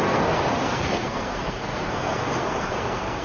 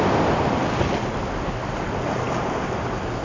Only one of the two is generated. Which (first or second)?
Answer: first